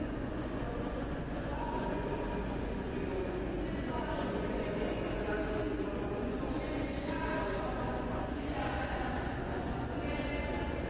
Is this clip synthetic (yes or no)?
yes